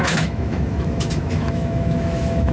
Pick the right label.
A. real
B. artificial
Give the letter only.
B